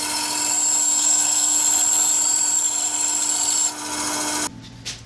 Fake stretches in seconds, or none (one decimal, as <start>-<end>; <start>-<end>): 0.8-1.6